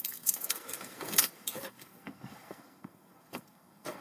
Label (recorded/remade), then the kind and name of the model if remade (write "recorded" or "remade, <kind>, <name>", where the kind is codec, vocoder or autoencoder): remade, codec, SNAC